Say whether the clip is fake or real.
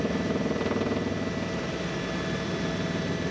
real